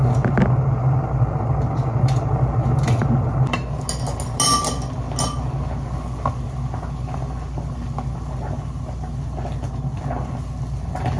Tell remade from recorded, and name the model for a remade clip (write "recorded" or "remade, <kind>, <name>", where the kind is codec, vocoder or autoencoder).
recorded